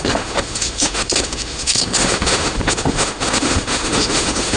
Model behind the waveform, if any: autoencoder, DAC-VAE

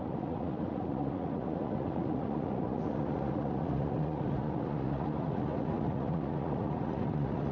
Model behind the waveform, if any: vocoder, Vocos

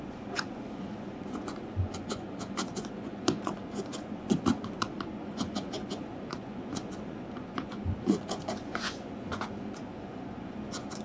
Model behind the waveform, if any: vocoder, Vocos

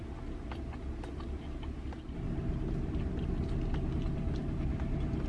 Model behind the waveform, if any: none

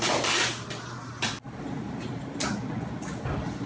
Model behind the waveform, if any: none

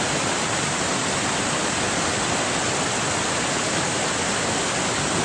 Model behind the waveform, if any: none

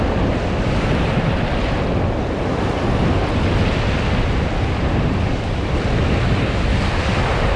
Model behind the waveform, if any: none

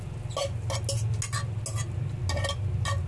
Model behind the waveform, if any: none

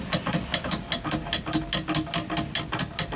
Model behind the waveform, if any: none